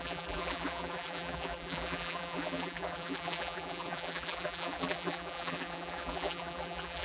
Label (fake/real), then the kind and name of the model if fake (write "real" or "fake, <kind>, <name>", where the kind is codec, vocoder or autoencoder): fake, vocoder, BigVGAN v2